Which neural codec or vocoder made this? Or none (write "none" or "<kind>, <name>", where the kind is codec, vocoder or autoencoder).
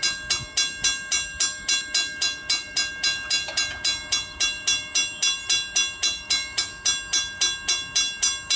none